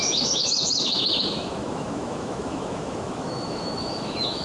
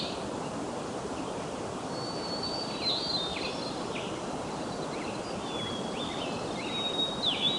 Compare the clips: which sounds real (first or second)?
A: second